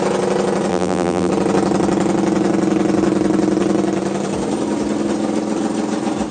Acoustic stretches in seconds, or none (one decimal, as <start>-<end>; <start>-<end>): 0.0-0.7; 1.3-6.3